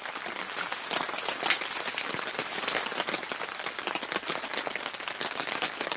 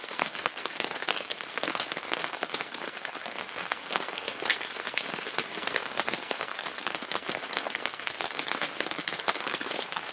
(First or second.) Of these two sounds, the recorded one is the first